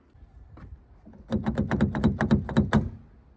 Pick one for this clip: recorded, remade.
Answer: recorded